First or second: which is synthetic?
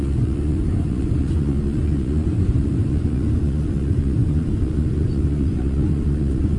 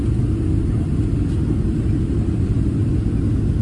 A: first